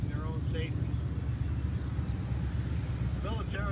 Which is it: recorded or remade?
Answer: recorded